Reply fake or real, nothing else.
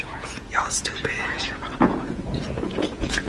fake